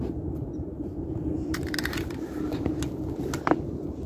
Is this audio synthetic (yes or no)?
no